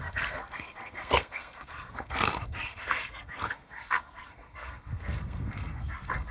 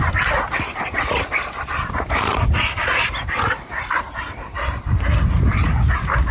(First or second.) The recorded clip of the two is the second